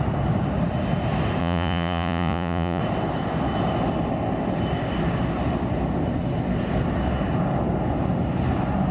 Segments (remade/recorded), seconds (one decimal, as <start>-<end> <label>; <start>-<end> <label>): 0.0-1.4 recorded; 1.4-2.8 remade; 2.8-8.9 recorded